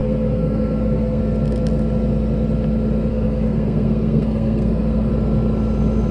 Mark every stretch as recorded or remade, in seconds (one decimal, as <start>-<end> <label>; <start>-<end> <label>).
0.0-1.2 remade; 1.2-3.1 recorded; 3.1-5.1 remade; 5.1-6.1 recorded